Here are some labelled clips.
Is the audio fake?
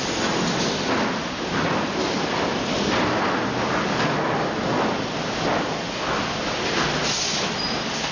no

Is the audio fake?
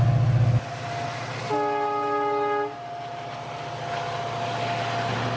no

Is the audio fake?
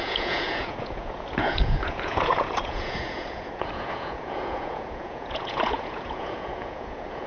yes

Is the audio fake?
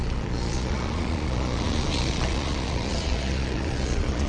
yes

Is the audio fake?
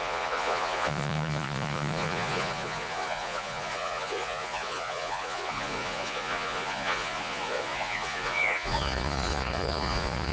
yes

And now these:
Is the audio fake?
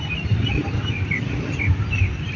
no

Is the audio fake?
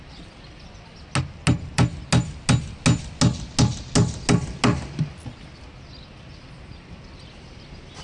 no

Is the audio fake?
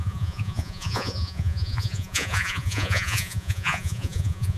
yes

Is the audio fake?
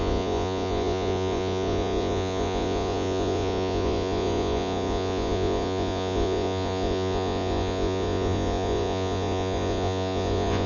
yes